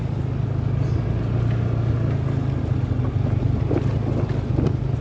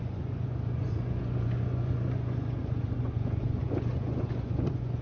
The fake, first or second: second